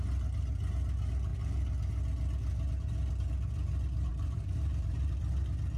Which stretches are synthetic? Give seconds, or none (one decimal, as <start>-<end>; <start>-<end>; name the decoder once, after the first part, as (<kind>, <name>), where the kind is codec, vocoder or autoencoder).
4.1-5.2 (vocoder, BigVGAN v2)